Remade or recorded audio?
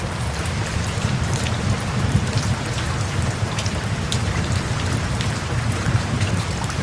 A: remade